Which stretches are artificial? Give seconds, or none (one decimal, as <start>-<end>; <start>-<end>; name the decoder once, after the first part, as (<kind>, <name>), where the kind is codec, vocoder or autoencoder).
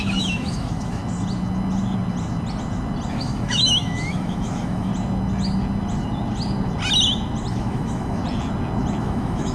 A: 0.0-1.0 (autoencoder, DAC-VAE); 3.1-4.9; 7.5-8.2; 9.0-9.5